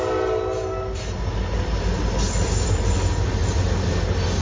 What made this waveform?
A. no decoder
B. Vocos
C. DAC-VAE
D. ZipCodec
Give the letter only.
A